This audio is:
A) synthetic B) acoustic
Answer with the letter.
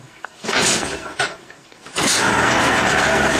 A